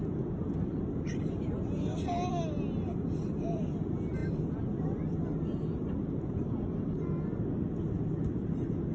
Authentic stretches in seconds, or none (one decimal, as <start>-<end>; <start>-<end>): 0.0-8.9

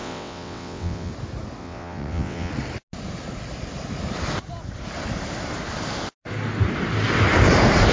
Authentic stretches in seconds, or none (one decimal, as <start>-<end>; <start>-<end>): 1.1-1.6; 2.5-7.9

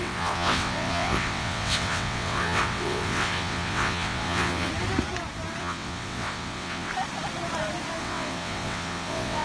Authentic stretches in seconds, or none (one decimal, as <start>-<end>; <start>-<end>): 4.7-5.6; 6.9-8.0

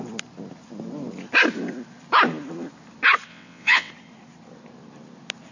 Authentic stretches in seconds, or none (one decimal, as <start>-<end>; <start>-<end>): 0.0-3.3; 3.9-5.5

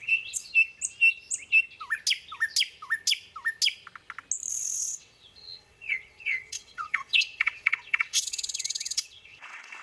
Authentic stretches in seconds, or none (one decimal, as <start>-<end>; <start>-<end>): 0.5-4.5

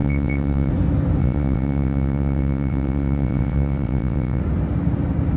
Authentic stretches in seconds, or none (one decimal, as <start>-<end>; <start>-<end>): 0.7-1.2; 4.4-5.4

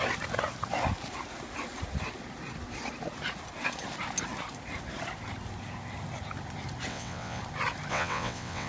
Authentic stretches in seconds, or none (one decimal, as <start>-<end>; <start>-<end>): 0.0-6.9; 7.4-7.9

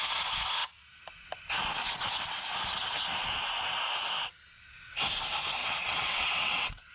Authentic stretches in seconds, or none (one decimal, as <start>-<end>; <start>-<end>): 0.0-5.6